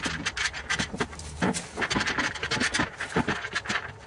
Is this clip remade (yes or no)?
no